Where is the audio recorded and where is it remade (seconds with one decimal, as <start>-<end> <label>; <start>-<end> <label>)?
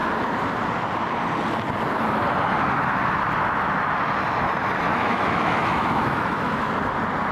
0.0-4.9 recorded; 4.9-6.7 remade; 6.7-7.3 recorded